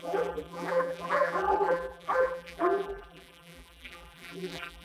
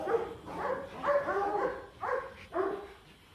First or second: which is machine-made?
first